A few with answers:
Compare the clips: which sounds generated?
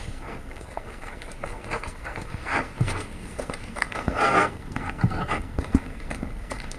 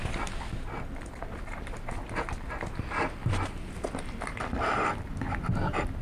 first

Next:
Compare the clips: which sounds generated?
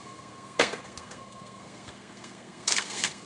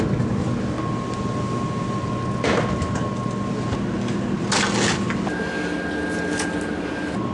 first